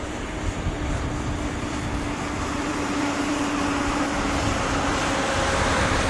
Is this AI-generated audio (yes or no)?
yes